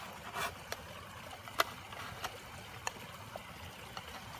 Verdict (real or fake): real